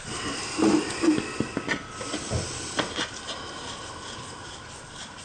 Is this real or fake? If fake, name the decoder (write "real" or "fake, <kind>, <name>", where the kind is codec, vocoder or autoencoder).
real